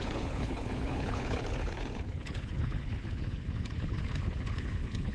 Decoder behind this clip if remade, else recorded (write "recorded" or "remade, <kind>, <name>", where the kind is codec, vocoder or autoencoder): remade, codec, HILCodec